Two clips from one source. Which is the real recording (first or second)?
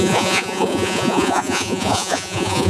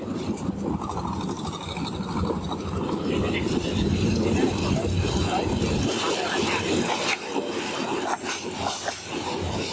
second